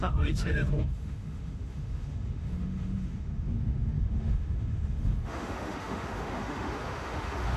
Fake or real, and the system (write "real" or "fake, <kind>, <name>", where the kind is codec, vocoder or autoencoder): fake, autoencoder, DAC-VAE